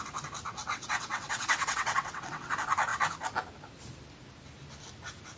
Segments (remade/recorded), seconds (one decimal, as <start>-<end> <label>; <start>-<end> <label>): 0.0-0.6 recorded; 0.6-2.5 remade; 2.5-5.4 recorded